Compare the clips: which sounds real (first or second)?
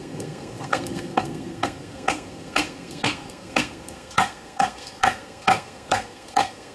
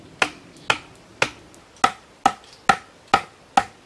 second